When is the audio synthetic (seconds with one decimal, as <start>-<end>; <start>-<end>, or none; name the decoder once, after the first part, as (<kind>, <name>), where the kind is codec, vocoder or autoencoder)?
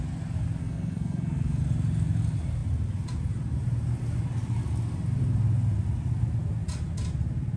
0.6-1.6 (codec, SNAC)